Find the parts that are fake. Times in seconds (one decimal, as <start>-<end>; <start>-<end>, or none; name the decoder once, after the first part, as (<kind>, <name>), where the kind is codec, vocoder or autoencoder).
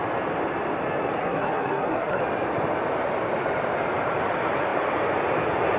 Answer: 1.2-2.2 (codec, SNAC)